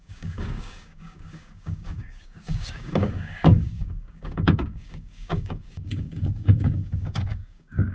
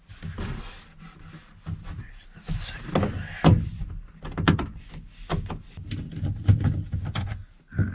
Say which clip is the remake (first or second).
first